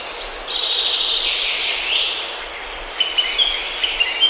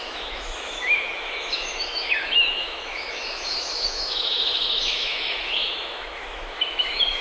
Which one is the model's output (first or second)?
second